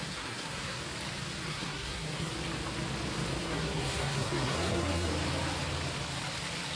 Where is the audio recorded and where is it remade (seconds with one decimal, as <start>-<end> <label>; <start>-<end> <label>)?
0.0-0.8 remade; 0.8-1.5 recorded; 1.5-2.3 remade; 2.3-3.4 recorded; 3.4-5.1 remade; 5.1-6.8 recorded